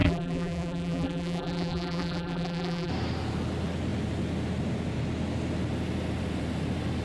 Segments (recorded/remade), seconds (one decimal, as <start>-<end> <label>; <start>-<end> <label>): 0.0-2.9 remade; 2.9-7.0 recorded